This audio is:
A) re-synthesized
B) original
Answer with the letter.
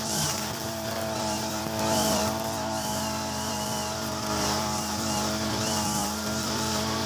A